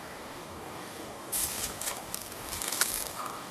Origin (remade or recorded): remade